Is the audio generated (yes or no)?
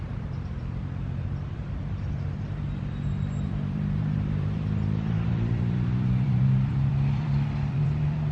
yes